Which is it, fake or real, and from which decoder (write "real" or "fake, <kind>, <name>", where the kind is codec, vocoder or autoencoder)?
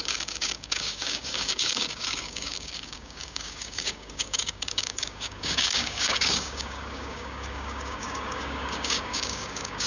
fake, codec, DAC